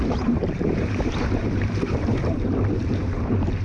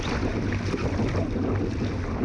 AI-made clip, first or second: first